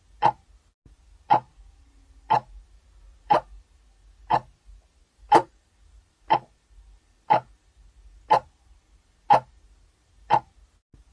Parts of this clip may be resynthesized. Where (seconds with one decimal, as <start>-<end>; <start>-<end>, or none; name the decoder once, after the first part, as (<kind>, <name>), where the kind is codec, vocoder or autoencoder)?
5.0-6.1 (vocoder, BigVGAN v2)